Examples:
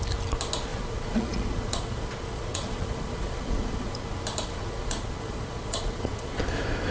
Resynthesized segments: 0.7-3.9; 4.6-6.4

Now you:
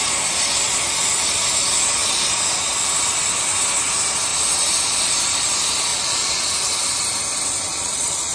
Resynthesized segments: 5.9-6.5; 7.7-8.3

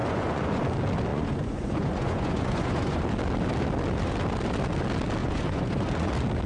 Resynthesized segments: 0.0-0.6; 1.1-3.0; 5.2-6.1

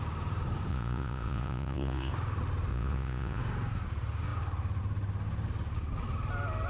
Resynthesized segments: 0.7-2.1; 2.7-3.4

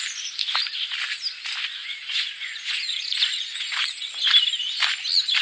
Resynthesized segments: 1.8-4.1

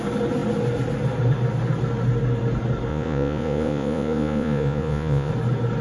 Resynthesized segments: 2.9-5.3

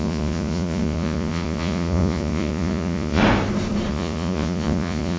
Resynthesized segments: 0.0-3.2; 3.9-5.2